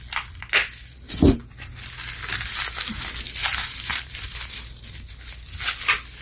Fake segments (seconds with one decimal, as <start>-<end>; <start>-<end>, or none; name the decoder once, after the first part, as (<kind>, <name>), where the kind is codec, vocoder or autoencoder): 0.9-1.4 (vocoder, BigVGAN v2); 3.4-4.8